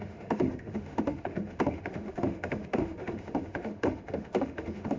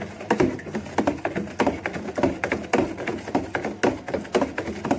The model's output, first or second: first